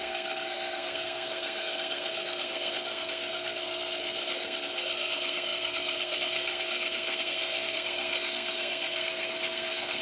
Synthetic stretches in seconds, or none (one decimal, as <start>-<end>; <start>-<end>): 0.0-10.0